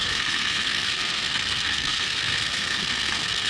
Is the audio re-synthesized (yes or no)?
yes